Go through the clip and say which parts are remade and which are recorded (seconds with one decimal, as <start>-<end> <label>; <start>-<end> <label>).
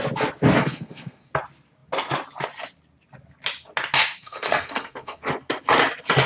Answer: 0.0-0.6 recorded; 0.6-1.3 remade; 1.3-4.2 recorded; 4.2-5.2 remade; 5.2-6.3 recorded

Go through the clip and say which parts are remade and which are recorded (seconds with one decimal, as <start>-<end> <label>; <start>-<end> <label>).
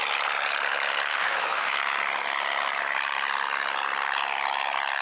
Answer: 0.0-1.1 recorded; 1.1-1.7 remade; 1.7-5.0 recorded